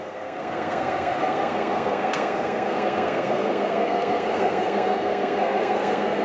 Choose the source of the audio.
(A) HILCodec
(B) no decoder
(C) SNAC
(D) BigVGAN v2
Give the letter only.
C